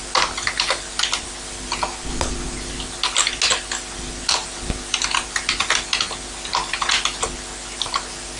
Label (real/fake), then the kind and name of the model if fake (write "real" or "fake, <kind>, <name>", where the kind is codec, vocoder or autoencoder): real